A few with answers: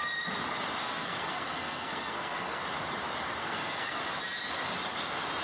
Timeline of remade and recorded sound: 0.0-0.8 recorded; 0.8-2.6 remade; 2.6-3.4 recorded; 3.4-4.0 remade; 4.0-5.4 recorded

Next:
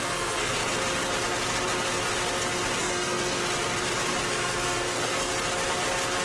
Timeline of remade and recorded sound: 0.0-0.6 remade; 0.6-2.8 recorded; 2.8-3.4 remade; 3.4-4.3 recorded; 4.3-5.3 remade; 5.3-6.2 recorded

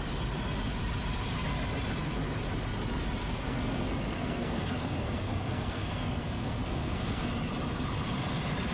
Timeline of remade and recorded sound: 0.0-3.2 recorded; 3.2-7.3 remade; 7.3-8.7 recorded

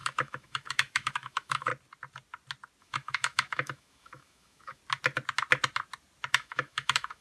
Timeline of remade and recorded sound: 0.0-1.7 remade; 1.7-2.8 recorded; 2.8-4.8 remade; 4.8-6.3 recorded; 6.3-7.2 remade

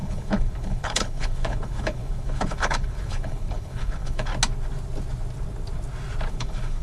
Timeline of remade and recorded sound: 0.0-4.3 remade; 4.3-6.3 recorded; 6.3-6.8 remade